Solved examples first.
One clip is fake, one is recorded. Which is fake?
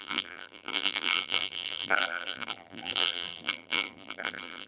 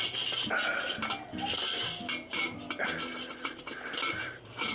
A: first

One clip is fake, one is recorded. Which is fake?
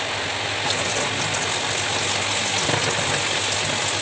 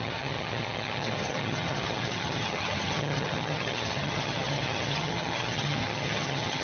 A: second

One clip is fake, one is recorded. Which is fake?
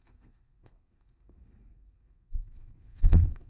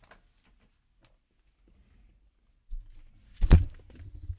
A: first